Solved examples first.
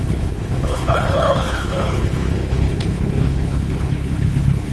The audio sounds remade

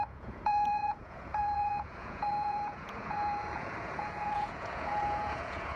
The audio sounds remade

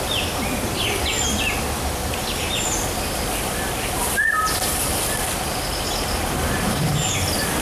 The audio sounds recorded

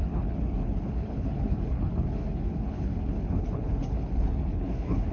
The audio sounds remade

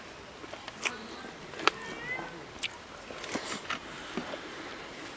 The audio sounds recorded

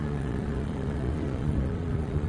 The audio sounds remade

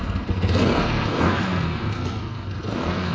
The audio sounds remade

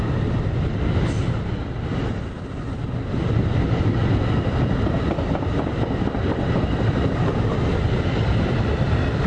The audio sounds recorded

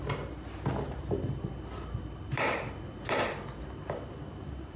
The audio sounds recorded